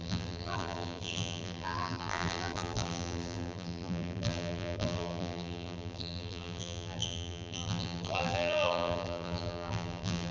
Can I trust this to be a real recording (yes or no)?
no